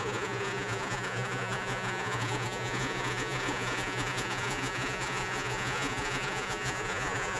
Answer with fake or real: fake